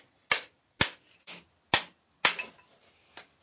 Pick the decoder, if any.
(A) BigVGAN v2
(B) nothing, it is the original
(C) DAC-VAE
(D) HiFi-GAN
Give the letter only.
B